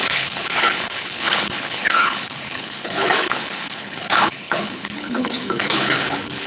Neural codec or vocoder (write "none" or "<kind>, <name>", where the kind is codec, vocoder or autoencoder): codec, HILCodec